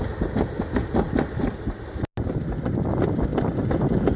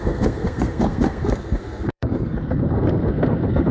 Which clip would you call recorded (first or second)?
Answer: first